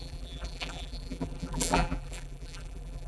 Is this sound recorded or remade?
remade